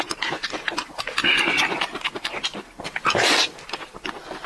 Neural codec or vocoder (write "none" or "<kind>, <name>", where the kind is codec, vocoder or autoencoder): none